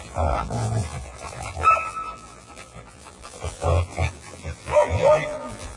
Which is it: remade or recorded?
remade